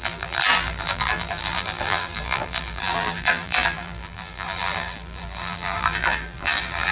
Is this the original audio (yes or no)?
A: no